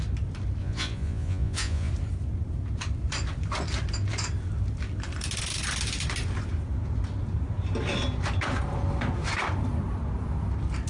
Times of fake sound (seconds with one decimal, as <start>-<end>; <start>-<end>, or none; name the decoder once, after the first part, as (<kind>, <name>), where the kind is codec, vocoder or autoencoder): 0.6-1.9 (vocoder, Vocos)